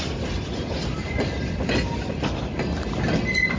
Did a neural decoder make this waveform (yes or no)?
no